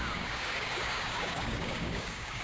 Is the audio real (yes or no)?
no